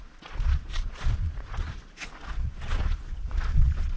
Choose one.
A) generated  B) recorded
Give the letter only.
A